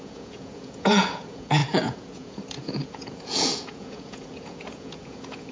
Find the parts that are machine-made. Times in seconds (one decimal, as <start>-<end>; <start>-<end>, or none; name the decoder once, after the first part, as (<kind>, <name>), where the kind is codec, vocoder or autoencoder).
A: 0.0-5.5 (vocoder, Vocos)